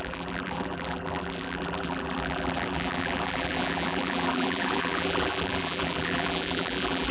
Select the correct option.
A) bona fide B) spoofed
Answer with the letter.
B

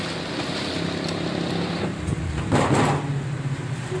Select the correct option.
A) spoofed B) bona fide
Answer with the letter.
B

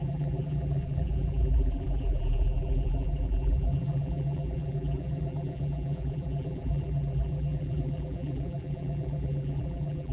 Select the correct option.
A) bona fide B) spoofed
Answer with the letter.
B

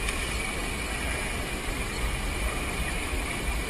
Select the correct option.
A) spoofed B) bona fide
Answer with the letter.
B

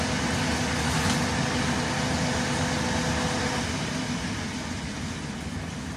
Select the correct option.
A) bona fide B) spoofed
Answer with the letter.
A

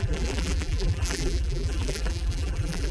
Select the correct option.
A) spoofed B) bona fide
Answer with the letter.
A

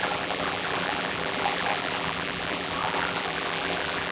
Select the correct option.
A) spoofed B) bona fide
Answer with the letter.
A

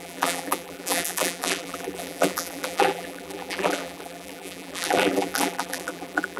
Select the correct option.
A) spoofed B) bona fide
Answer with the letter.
A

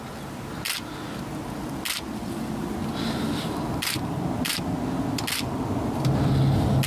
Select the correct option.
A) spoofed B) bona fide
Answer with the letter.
B